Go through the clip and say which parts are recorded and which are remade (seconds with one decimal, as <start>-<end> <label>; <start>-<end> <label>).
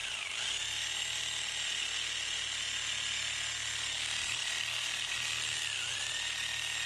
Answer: 0.0-6.9 recorded